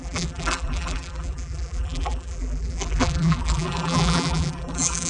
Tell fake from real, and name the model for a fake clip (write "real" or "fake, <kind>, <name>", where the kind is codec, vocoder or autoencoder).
fake, vocoder, BigVGAN v2